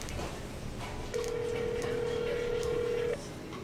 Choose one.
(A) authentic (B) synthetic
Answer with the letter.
A